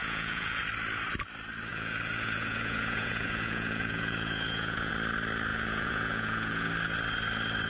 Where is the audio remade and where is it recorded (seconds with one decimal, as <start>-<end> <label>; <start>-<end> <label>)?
0.0-0.6 remade; 0.6-1.7 recorded; 1.7-4.9 remade; 4.9-5.5 recorded; 5.5-6.7 remade; 6.7-7.7 recorded